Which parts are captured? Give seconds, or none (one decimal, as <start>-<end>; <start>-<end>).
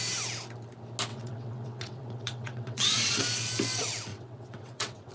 0.0-1.1; 3.2-4.1